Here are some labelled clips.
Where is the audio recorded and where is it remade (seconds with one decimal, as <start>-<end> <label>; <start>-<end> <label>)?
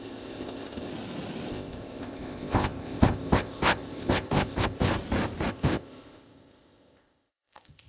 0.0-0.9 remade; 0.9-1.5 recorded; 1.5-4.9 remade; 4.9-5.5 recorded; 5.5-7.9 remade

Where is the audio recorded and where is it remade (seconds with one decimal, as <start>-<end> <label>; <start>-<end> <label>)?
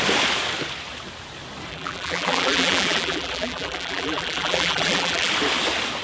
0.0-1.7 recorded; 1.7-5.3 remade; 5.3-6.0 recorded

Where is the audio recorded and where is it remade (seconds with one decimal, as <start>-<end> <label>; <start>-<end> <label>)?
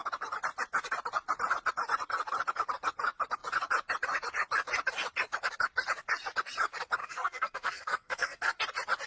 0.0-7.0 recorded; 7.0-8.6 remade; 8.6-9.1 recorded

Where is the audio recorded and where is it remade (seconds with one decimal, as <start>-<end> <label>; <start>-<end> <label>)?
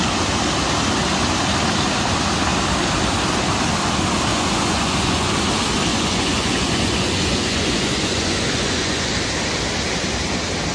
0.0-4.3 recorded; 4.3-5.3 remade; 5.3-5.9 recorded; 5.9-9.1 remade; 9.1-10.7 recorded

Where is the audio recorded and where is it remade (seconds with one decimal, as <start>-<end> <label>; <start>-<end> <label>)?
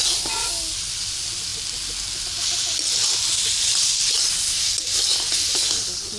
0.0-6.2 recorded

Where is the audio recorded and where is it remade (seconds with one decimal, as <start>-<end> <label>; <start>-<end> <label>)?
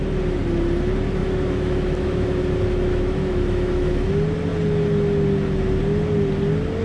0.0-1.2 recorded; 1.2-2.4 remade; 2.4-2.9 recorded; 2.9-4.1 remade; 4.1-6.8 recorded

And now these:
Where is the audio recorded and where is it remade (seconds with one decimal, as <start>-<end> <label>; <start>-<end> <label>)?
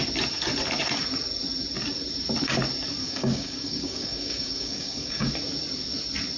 0.0-3.0 recorded; 3.0-5.3 remade; 5.3-6.4 recorded